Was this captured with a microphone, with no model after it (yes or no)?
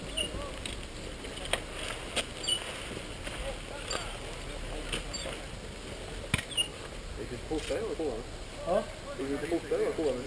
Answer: yes